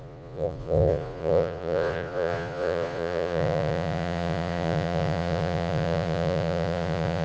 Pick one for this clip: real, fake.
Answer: fake